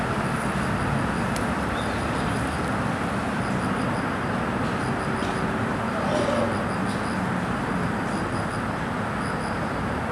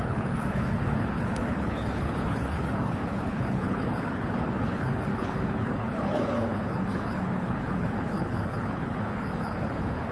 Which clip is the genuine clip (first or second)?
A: first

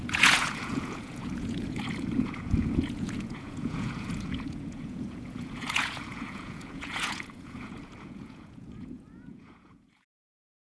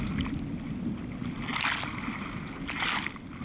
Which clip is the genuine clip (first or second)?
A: second